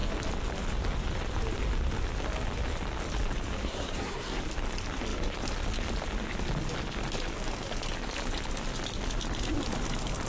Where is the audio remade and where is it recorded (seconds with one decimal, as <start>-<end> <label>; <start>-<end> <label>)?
0.0-3.6 recorded; 3.6-4.4 remade; 4.4-10.3 recorded